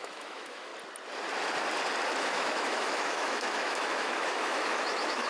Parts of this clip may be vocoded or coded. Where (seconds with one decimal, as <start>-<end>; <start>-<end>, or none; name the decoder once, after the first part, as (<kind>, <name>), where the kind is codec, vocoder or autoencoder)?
0.0-0.7 (autoencoder, DAC-VAE); 2.2-5.3